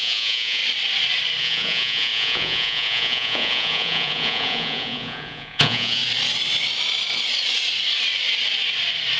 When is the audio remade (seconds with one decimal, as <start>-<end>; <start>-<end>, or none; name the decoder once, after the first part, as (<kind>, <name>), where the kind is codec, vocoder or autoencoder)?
0.0-0.6 (vocoder, Vocos); 1.4-6.0